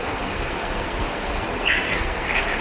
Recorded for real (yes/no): no